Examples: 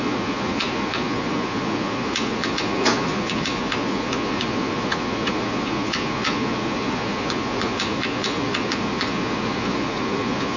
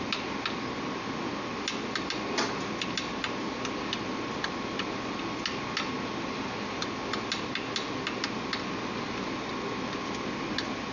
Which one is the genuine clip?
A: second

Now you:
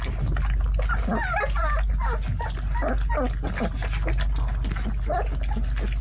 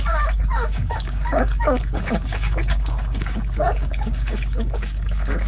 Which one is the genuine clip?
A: first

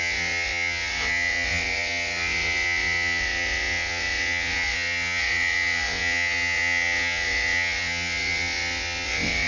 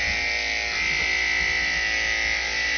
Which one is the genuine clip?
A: second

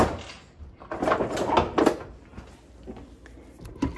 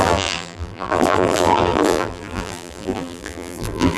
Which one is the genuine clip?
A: first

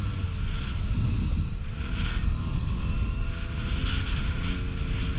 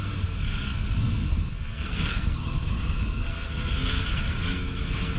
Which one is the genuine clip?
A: first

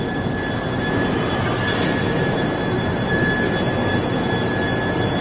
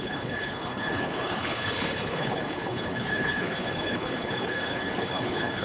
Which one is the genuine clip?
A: first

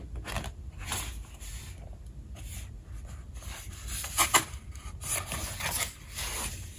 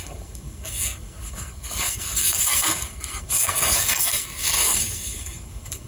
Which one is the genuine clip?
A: first